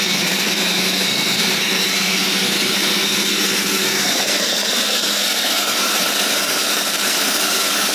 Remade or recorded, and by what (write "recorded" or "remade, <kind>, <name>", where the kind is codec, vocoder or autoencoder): remade, codec, SNAC